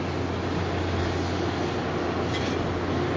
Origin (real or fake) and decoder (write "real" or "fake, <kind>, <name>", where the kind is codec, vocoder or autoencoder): real